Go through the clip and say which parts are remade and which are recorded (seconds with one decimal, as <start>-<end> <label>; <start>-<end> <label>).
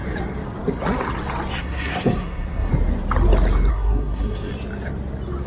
0.0-1.6 recorded; 1.6-2.7 remade; 2.7-3.7 recorded; 3.7-4.5 remade; 4.5-5.5 recorded